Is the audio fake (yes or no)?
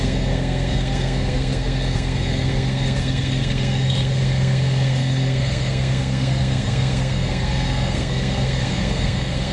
yes